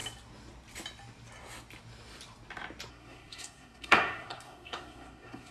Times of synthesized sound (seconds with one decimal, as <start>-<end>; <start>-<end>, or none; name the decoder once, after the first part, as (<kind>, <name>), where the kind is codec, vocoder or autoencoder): 2.9-5.5 (codec, SNAC)